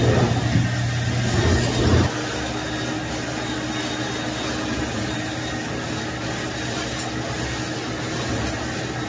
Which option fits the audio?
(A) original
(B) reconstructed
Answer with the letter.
A